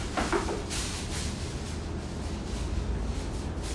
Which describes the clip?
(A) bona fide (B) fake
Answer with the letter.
A